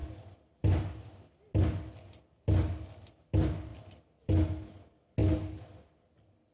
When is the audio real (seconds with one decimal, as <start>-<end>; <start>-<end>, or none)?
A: 0.0-6.5